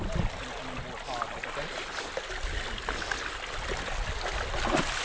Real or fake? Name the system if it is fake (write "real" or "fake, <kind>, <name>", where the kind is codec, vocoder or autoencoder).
real